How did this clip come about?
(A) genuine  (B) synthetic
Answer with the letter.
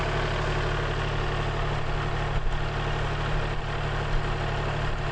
A